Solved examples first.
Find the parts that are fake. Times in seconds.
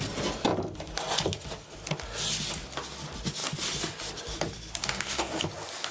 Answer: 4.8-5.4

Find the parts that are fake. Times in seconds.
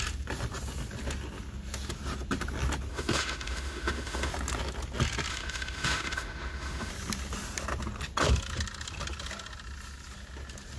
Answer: 2.9-4.3; 5.3-6.9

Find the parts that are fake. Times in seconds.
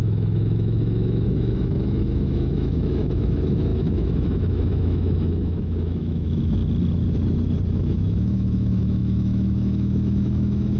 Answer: 0.0-6.6; 7.7-10.8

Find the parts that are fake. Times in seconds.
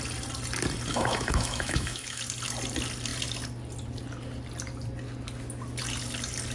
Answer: 0.9-2.2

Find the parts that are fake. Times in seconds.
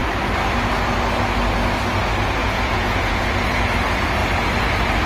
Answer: 2.4-3.2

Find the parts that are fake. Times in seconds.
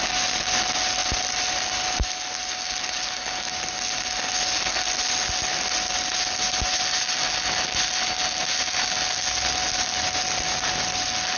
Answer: none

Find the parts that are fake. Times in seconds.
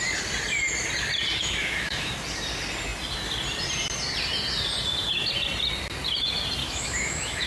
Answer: 1.4-2.1; 6.6-7.5